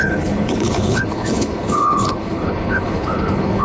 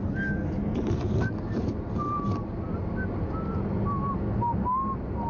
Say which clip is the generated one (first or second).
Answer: first